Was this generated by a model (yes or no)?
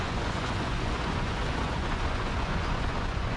yes